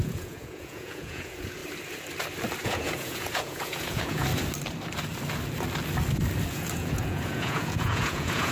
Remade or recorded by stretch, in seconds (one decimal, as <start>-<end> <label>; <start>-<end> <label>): 0.0-1.6 remade; 1.6-2.6 recorded; 2.6-4.3 remade; 4.3-6.5 recorded; 6.5-8.5 remade